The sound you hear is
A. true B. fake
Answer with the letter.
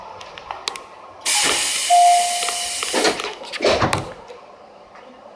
A